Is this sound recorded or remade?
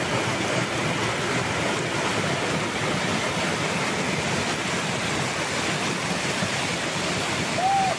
recorded